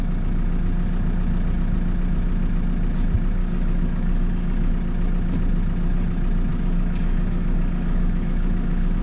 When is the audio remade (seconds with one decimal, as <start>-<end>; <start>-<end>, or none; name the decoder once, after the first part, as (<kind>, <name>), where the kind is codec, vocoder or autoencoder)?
3.4-4.7 (codec, DAC); 6.5-9.0

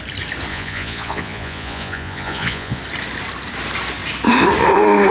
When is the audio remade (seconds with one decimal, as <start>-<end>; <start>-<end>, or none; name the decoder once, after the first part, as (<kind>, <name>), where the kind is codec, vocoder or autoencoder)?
0.5-2.8 (vocoder, Vocos)

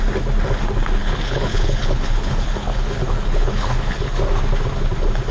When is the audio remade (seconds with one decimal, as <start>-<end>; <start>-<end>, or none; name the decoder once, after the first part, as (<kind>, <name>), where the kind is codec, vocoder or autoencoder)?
1.0-4.2 (codec, HILCodec)

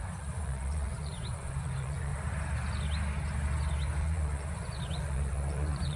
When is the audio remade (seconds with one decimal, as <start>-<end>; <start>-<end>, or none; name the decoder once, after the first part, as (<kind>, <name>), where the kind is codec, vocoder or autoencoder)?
0.0-2.1 (vocoder, Vocos); 4.0-6.0

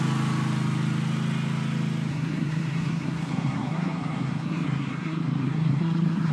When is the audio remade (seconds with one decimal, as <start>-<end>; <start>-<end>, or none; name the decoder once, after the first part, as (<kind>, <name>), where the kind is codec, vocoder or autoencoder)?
2.1-6.3 (codec, SNAC)